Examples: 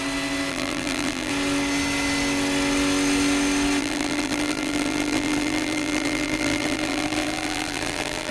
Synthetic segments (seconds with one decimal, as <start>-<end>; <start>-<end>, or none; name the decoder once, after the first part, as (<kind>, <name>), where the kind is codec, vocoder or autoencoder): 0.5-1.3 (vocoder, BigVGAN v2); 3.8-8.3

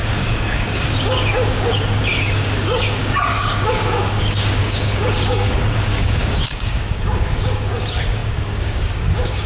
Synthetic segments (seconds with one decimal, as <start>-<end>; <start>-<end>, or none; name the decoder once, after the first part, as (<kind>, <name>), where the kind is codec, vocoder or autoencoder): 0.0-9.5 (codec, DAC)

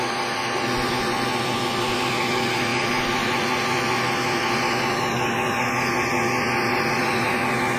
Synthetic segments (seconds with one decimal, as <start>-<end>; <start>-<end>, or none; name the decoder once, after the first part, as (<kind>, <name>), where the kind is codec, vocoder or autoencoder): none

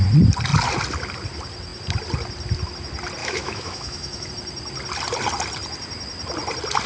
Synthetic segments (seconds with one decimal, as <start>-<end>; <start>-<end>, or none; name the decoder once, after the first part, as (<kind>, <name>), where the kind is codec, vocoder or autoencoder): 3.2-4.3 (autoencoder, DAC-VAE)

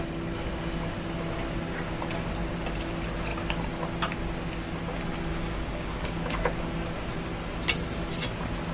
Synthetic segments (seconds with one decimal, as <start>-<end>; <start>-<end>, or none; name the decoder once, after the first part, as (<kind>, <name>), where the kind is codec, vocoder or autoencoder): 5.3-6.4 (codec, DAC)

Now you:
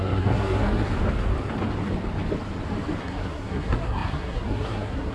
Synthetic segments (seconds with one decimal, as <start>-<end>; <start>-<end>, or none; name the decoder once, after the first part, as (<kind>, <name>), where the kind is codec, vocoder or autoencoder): 0.0-0.9 (codec, SNAC); 3.0-5.1

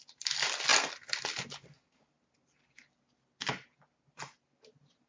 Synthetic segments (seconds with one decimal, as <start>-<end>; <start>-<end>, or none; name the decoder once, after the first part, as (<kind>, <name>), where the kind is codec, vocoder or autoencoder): none

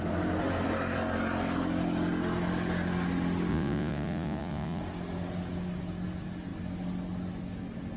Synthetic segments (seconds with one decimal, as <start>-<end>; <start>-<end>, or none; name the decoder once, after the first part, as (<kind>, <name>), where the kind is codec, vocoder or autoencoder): 3.5-4.8 (vocoder, Vocos)